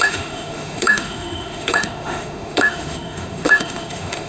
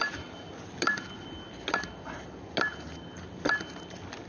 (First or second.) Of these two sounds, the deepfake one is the first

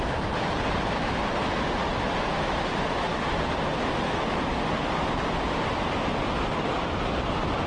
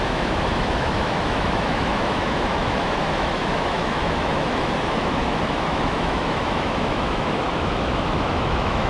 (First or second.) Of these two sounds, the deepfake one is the second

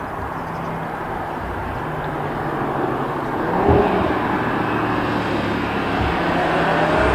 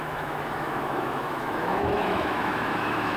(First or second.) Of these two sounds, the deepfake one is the second